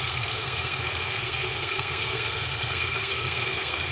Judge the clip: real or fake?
fake